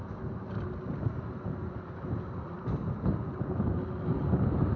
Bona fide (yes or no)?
yes